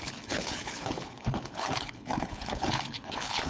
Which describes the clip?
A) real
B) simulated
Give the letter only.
B